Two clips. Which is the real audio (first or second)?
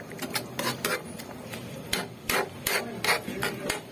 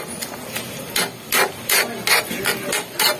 second